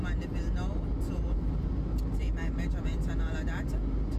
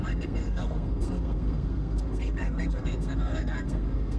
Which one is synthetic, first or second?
second